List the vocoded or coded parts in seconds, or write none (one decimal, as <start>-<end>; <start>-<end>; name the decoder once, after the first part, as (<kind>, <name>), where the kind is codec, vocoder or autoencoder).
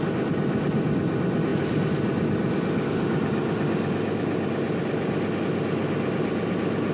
none